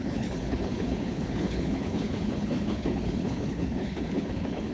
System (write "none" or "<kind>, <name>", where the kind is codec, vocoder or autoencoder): codec, HILCodec